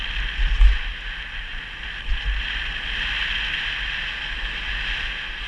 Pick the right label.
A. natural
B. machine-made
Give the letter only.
A